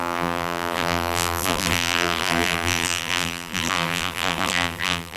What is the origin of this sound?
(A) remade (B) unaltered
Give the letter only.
A